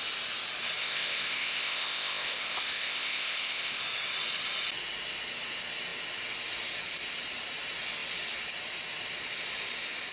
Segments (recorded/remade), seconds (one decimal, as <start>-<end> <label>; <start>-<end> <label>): 0.0-0.8 recorded; 0.8-3.8 remade; 3.8-10.1 recorded